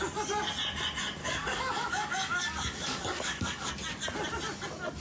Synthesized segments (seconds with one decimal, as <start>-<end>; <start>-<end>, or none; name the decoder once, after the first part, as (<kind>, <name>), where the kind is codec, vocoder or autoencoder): 1.2-3.7 (codec, DAC)